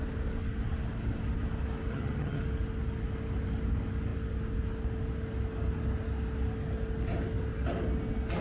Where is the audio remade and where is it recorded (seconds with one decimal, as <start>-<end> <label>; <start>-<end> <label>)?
0.0-1.9 recorded; 1.9-2.4 remade; 2.4-8.4 recorded